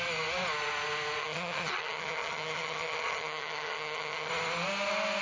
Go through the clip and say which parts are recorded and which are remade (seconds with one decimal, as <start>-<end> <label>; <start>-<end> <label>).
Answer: 0.0-1.2 recorded; 1.2-4.3 remade; 4.3-5.2 recorded